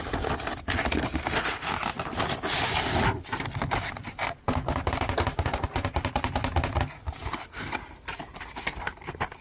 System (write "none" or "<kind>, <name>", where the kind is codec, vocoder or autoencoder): none